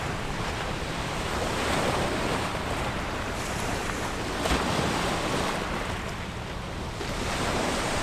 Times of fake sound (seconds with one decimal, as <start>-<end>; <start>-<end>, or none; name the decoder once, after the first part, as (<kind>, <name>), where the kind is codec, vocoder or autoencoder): 0.0-3.8 (vocoder, BigVGAN v2); 7.3-8.0